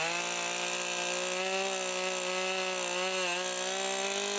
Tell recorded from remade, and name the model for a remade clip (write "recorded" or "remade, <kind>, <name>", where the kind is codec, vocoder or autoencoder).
recorded